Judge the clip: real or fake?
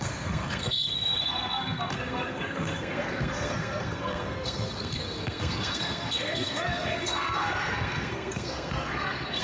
fake